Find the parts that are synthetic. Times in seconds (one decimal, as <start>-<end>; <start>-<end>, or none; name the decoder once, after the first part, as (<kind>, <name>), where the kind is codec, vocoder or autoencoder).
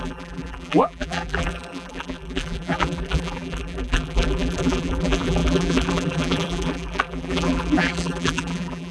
0.0-8.9 (vocoder, BigVGAN v2)